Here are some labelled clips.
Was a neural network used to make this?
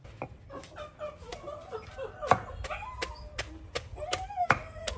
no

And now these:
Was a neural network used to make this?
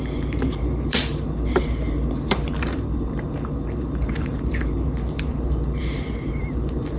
yes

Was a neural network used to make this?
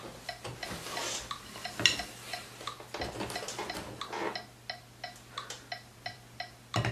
no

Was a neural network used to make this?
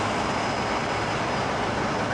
no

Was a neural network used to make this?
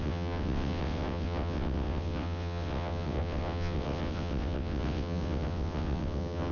yes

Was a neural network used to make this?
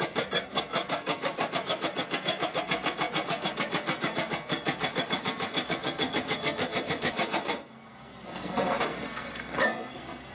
yes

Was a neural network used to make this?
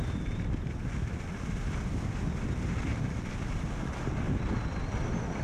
no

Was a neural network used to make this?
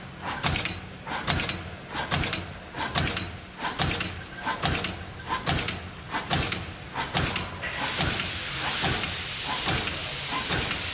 no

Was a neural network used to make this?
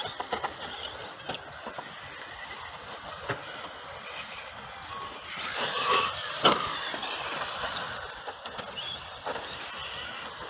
no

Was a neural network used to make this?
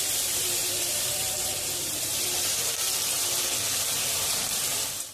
yes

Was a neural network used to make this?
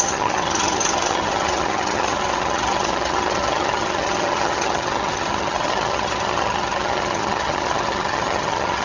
yes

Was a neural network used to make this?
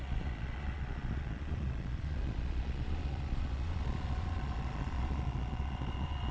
yes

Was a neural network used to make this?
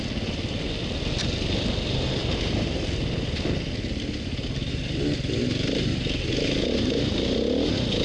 no